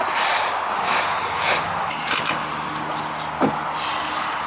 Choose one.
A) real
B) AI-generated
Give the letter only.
A